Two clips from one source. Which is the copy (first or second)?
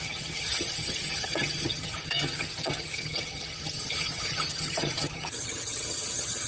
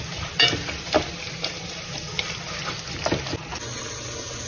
first